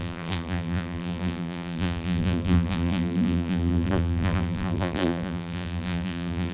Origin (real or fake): fake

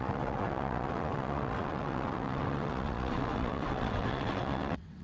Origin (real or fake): fake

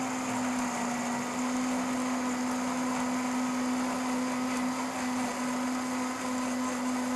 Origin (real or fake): real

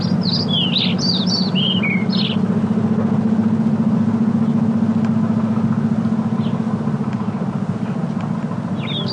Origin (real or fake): real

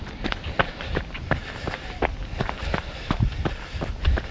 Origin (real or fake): fake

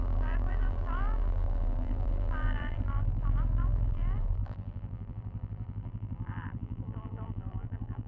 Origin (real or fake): fake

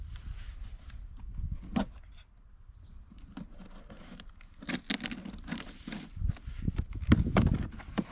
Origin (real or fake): real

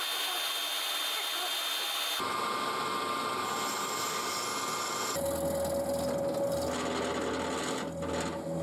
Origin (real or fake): real